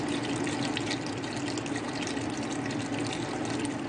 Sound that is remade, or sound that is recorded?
recorded